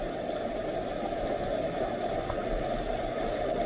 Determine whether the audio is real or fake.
real